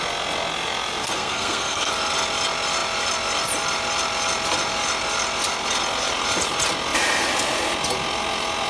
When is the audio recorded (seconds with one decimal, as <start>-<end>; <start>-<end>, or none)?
0.0-1.0; 1.9-8.7